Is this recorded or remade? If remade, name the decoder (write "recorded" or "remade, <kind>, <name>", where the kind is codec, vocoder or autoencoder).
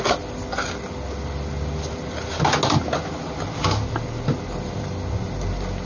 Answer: recorded